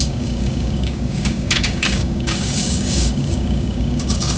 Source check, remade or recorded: remade